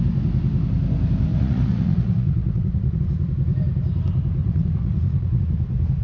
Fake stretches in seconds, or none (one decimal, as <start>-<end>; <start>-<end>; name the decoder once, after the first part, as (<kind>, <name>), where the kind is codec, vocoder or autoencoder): 1.3-3.0 (vocoder, Vocos); 4.4-5.4